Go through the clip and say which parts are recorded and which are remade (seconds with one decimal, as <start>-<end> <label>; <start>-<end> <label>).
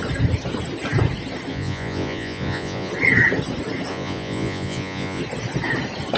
0.0-1.5 recorded; 1.5-2.9 remade; 2.9-3.9 recorded; 3.9-5.2 remade; 5.2-6.2 recorded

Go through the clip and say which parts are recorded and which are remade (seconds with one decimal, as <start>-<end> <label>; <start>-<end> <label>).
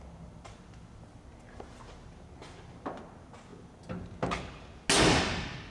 0.0-5.7 recorded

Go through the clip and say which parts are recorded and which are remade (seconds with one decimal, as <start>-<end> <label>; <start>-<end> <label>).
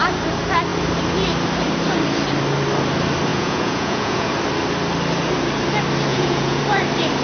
0.0-3.3 recorded; 3.3-4.3 remade; 4.3-6.1 recorded; 6.1-6.6 remade; 6.6-7.2 recorded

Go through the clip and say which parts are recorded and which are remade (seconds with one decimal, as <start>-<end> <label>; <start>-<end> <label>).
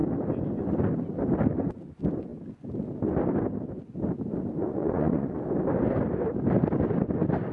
0.0-4.6 recorded; 4.6-5.4 remade; 5.4-7.5 recorded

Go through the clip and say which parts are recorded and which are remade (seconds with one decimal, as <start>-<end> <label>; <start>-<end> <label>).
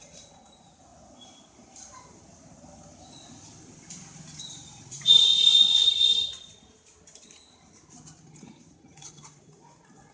0.0-0.9 remade; 0.9-4.4 recorded; 4.4-5.3 remade; 5.3-8.2 recorded; 8.2-10.1 remade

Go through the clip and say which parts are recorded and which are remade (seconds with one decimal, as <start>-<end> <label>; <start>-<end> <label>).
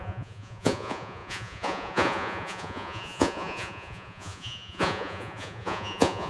0.0-6.3 remade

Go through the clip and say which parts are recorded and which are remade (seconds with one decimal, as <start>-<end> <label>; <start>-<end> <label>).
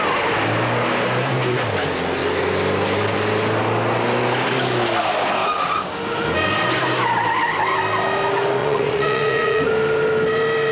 0.0-8.6 recorded; 8.6-9.7 remade; 9.7-10.7 recorded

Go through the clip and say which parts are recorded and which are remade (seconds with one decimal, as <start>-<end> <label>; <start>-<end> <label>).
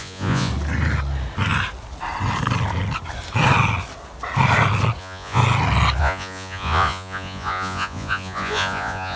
0.0-0.5 remade; 0.5-5.0 recorded; 5.0-5.4 remade; 5.4-6.0 recorded; 6.0-9.2 remade